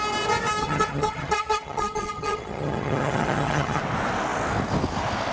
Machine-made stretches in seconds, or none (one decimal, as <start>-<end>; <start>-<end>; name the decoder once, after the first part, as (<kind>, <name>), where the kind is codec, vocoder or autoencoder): 0.6-3.8 (vocoder, HiFi-GAN)